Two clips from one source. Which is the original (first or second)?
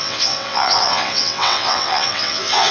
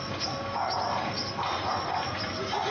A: second